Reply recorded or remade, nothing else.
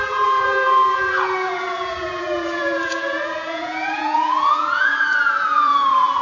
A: remade